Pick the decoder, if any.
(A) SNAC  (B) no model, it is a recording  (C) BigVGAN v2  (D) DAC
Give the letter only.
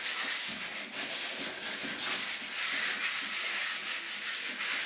B